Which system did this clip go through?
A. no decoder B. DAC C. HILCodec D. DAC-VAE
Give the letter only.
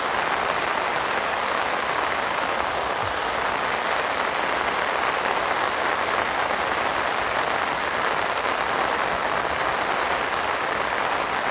A